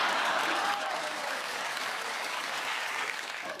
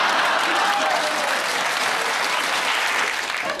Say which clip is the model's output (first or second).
first